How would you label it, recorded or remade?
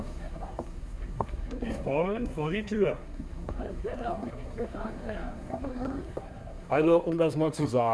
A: remade